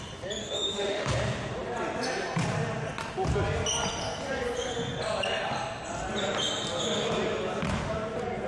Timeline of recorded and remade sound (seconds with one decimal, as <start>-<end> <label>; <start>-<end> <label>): 0.0-0.4 recorded; 0.4-1.1 remade; 1.1-8.5 recorded